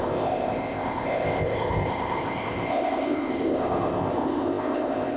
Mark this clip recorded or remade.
remade